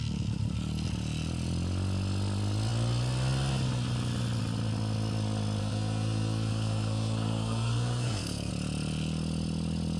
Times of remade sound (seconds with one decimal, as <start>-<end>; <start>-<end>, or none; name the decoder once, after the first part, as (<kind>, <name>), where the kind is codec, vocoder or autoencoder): 5.6-8.5 (codec, SNAC)